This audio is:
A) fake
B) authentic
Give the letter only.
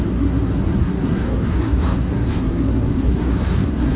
A